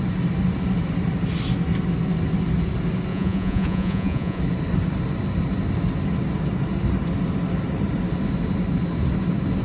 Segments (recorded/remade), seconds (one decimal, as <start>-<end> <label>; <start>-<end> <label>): 0.0-3.1 recorded; 3.1-4.4 remade; 4.4-9.6 recorded